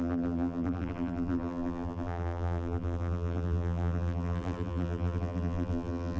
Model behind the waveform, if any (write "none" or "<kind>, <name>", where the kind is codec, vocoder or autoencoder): vocoder, BigVGAN v2